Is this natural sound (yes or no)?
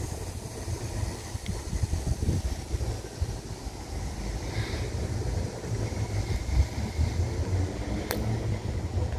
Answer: yes